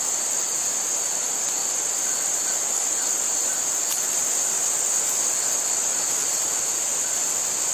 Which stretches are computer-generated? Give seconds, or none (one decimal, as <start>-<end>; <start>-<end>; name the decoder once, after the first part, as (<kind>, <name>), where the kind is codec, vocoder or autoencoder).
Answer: none